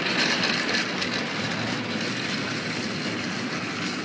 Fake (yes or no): no